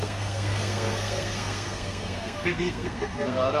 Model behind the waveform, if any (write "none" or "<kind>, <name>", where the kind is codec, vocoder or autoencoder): codec, SNAC